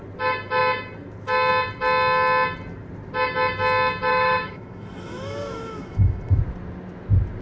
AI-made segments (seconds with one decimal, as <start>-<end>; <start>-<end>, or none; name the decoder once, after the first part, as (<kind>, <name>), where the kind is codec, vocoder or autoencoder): 4.1-6.4 (autoencoder, DAC-VAE)